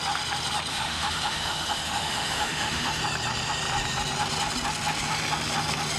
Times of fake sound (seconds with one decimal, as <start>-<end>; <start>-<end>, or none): 0.7-3.0